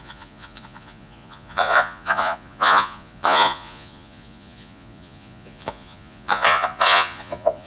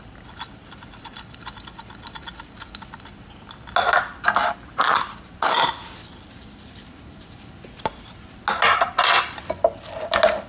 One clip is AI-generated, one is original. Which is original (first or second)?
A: second